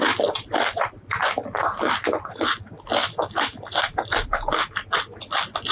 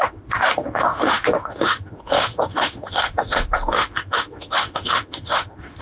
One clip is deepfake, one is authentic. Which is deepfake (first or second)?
second